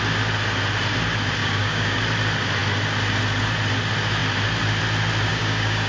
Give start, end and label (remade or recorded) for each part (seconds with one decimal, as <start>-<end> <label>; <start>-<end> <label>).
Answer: 0.0-1.4 recorded; 1.4-2.0 remade; 2.0-5.3 recorded; 5.3-5.9 remade